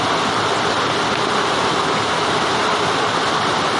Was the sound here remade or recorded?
recorded